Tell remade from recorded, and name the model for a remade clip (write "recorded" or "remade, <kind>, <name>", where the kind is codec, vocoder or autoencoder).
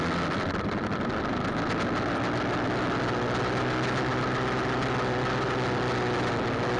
recorded